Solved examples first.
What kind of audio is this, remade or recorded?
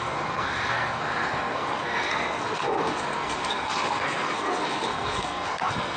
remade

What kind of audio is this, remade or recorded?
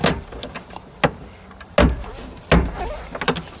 recorded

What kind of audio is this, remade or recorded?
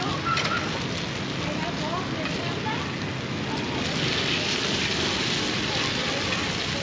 recorded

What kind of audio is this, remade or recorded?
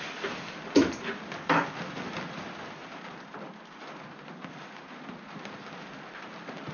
recorded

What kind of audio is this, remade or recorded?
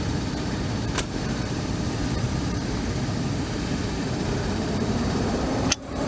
remade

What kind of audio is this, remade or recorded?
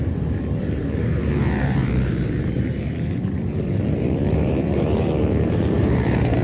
remade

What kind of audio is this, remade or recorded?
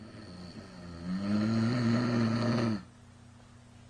recorded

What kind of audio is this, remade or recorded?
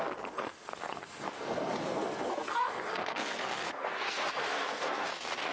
remade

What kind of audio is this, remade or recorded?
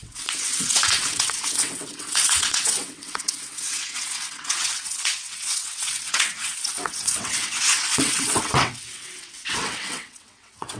remade